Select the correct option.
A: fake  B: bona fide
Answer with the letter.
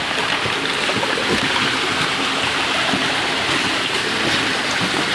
B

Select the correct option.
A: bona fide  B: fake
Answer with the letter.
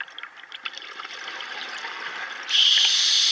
A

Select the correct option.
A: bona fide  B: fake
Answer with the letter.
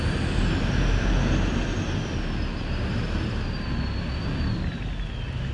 A